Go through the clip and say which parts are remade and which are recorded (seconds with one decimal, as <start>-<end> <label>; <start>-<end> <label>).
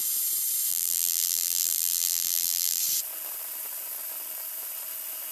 0.0-0.7 recorded; 0.7-2.8 remade; 2.8-5.3 recorded